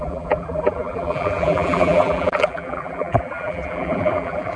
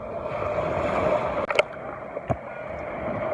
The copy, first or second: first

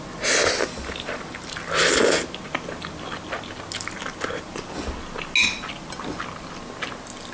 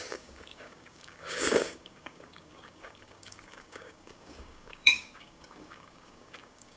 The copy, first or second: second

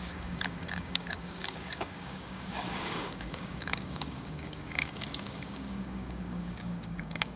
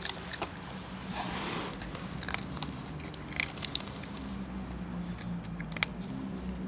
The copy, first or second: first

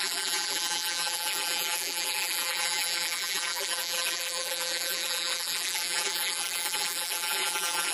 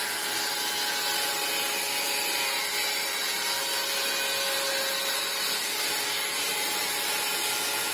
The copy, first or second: first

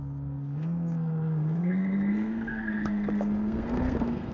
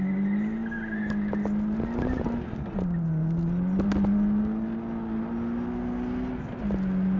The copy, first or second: first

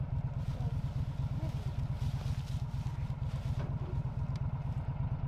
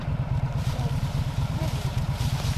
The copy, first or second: second